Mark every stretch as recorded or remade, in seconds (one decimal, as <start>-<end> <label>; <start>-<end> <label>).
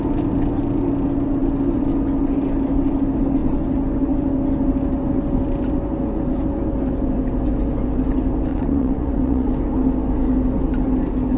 0.0-8.5 recorded; 8.5-9.5 remade; 9.5-11.4 recorded